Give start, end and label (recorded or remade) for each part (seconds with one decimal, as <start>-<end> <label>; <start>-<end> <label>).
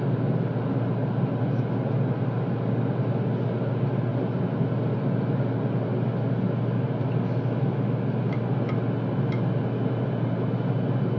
0.0-11.2 recorded